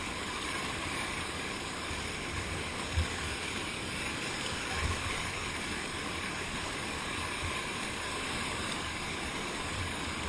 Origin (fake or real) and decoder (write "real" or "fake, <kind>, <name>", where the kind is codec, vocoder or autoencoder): fake, codec, DAC